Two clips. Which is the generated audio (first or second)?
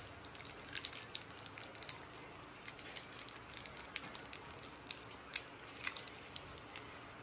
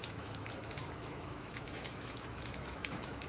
second